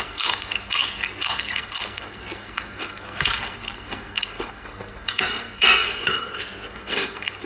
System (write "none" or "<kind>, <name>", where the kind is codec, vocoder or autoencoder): codec, SNAC